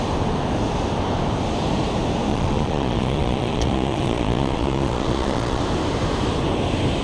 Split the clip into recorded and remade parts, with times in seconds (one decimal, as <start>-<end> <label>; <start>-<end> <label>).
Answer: 0.0-2.3 recorded; 2.3-5.6 remade; 5.6-7.0 recorded

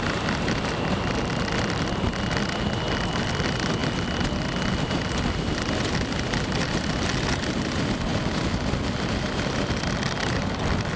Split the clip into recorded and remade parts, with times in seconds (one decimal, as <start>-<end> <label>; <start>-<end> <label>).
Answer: 0.0-11.0 recorded

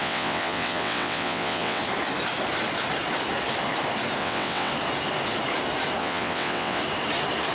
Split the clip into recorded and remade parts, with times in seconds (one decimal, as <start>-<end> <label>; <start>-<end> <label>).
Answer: 0.0-1.8 remade; 1.8-4.2 recorded; 4.2-4.7 remade; 4.7-6.0 recorded; 6.0-6.8 remade; 6.8-7.5 recorded

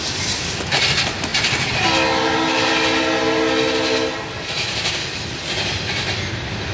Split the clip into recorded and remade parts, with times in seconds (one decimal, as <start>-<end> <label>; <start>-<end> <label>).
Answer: 0.0-6.7 recorded